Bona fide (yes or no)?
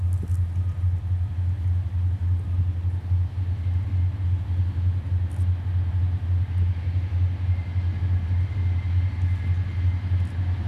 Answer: yes